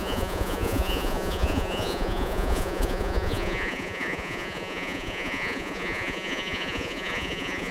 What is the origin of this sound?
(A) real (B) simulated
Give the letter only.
B